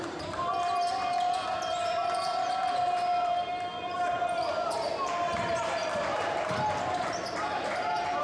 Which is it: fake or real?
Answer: fake